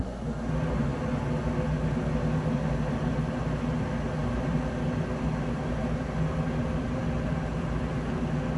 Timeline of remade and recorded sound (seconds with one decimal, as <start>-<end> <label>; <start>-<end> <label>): 0.0-8.6 recorded